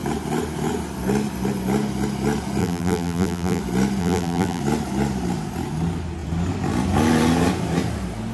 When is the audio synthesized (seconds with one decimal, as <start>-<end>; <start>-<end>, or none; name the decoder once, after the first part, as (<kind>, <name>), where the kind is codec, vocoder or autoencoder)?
2.6-3.6 (vocoder, BigVGAN v2); 4.0-4.6